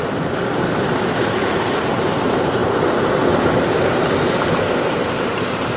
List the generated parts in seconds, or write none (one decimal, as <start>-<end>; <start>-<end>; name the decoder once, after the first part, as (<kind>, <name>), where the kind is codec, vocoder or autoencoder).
0.0-5.8 (vocoder, BigVGAN v2)